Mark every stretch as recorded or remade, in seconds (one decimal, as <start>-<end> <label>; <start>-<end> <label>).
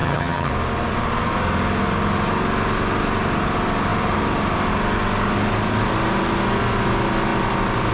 0.0-0.5 remade; 0.5-7.9 recorded